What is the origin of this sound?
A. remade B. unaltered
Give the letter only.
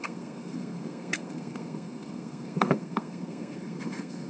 A